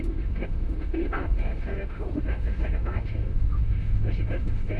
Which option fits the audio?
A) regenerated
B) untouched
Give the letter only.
A